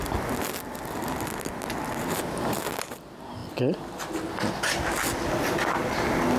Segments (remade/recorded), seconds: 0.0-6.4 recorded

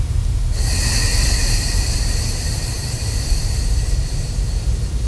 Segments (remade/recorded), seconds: 0.0-1.4 recorded; 1.4-4.5 remade; 4.5-5.1 recorded

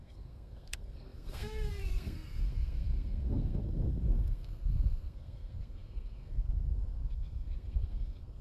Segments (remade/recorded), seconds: 0.0-8.4 remade

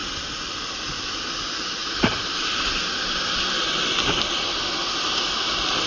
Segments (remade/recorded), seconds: 0.0-0.5 remade; 0.5-1.8 recorded; 1.8-2.9 remade; 2.9-5.9 recorded

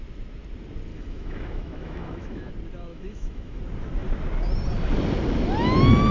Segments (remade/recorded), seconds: 0.0-0.9 recorded; 0.9-2.5 remade; 2.5-2.9 recorded; 2.9-3.6 remade; 3.6-6.1 recorded